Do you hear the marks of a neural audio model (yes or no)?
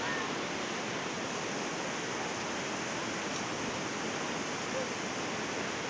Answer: no